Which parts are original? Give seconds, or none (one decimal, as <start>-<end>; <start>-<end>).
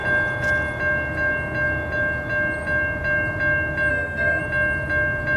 0.0-3.9; 4.4-5.4